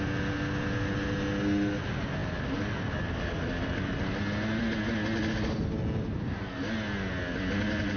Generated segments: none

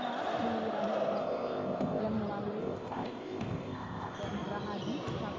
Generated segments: 1.2-2.0; 2.6-4.2

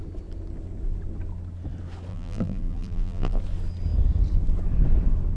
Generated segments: 2.1-3.4

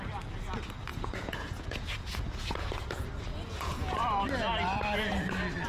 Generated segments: 0.9-2.5; 3.3-4.0